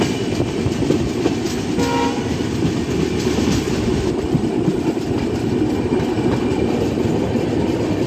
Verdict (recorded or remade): recorded